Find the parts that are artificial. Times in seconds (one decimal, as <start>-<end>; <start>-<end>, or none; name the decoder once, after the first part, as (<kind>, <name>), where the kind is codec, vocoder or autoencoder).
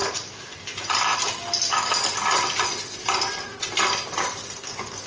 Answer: none